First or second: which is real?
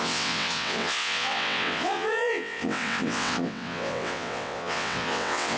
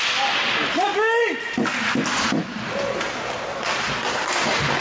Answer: second